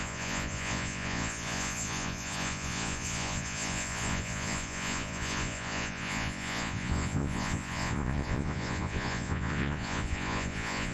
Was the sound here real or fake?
fake